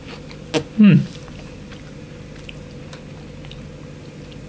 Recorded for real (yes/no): yes